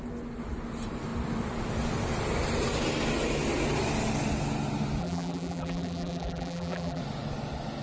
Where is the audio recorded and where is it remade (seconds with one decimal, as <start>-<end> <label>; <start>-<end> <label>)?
0.0-5.0 recorded; 5.0-7.0 remade; 7.0-7.8 recorded